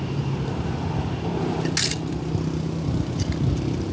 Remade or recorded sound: recorded